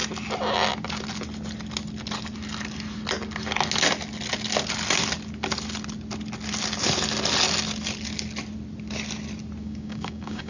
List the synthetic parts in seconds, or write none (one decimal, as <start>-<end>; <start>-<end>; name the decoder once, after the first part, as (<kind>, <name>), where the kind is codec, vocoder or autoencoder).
9.6-10.5 (codec, DAC)